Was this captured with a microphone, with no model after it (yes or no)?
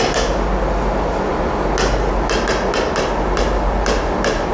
yes